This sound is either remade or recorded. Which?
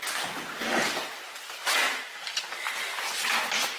recorded